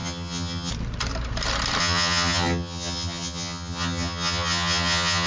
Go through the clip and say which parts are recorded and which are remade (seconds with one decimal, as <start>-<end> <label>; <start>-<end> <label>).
0.0-0.7 remade; 0.7-1.8 recorded; 1.8-5.3 remade